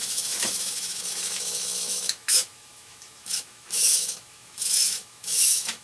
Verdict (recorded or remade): remade